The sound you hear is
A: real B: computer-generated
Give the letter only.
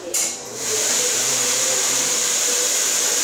B